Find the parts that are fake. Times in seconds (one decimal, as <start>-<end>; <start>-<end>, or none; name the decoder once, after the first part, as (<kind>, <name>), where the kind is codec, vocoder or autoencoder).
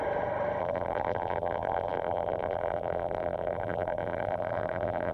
0.6-5.1 (vocoder, BigVGAN v2)